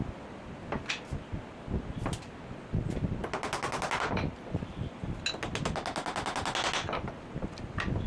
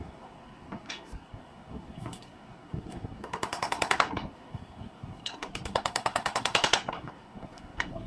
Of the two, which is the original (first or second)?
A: first